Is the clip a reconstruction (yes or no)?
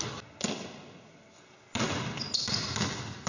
no